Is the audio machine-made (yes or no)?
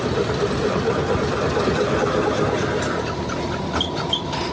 no